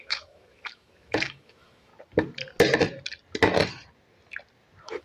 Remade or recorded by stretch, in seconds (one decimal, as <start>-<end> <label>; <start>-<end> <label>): 0.0-1.9 remade; 1.9-5.0 recorded